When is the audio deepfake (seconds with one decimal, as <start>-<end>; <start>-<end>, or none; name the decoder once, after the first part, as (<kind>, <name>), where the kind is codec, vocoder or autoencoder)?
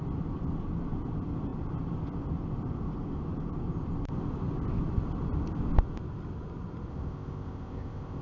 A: 6.9-8.2 (codec, ZipCodec)